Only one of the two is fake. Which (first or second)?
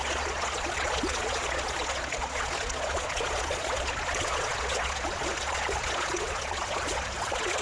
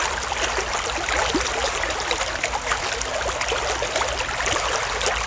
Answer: first